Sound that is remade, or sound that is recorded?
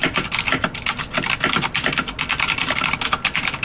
recorded